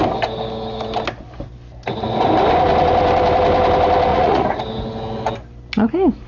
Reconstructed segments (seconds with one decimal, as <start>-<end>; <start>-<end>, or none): 4.1-4.6